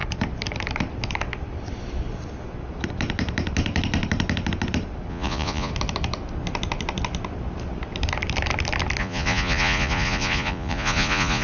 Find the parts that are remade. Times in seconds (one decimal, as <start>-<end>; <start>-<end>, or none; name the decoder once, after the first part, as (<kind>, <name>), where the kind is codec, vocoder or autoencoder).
5.1-5.7 (vocoder, Vocos); 9.0-11.4